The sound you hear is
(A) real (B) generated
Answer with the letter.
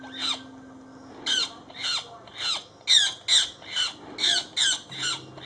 A